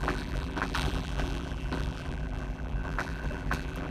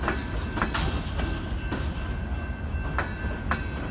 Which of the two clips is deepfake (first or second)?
first